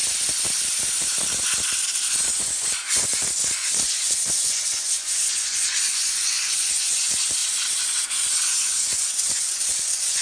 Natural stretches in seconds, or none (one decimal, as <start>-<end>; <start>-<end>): 0.0-2.3; 7.4-8.5